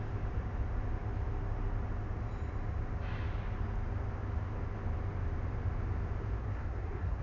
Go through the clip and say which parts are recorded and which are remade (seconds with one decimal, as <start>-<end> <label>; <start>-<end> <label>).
0.0-6.4 recorded; 6.4-7.2 remade